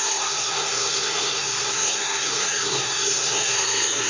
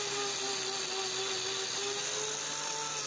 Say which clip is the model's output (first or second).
first